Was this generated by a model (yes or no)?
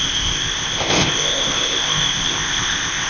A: yes